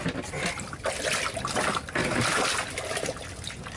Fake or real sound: real